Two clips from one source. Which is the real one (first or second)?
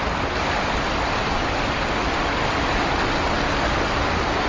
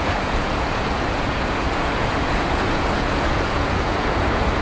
first